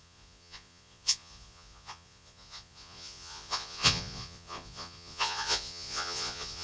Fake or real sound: fake